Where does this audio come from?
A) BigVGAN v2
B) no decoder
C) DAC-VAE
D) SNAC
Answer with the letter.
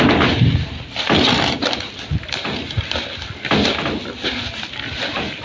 B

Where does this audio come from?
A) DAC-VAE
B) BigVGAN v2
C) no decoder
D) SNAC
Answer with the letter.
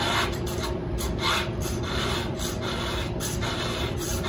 B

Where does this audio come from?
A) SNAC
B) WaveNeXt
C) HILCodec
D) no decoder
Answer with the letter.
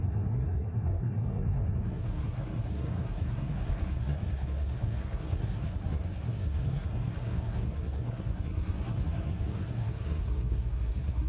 A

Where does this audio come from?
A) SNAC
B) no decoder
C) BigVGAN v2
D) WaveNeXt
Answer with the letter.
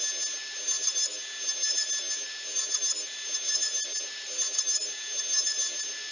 B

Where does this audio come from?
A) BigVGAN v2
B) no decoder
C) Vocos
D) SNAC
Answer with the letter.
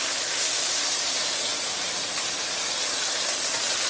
B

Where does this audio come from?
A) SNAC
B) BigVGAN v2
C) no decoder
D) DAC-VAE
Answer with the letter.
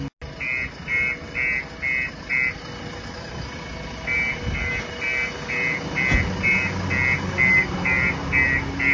C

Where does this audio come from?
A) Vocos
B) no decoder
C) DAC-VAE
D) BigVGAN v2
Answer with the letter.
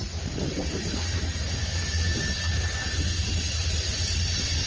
B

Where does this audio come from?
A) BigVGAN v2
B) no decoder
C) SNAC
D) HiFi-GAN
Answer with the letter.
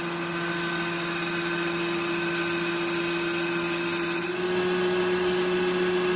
B